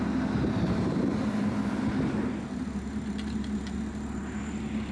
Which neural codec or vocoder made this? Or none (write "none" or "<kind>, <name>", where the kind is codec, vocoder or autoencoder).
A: none